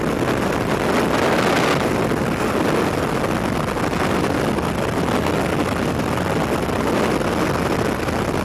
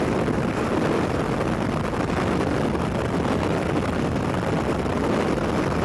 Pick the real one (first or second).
first